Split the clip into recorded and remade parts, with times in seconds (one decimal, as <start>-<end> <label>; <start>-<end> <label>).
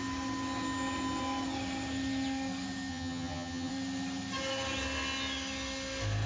0.0-2.9 recorded; 2.9-3.7 remade; 3.7-6.3 recorded